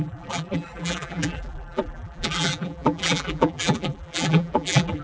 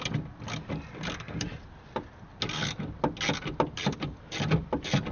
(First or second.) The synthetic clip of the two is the first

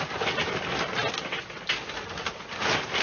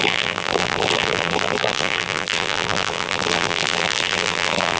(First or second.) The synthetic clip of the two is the second